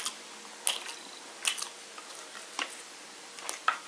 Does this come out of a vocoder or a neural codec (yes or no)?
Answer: no